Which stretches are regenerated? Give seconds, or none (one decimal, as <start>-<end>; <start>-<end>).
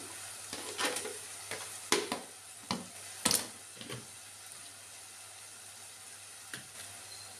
none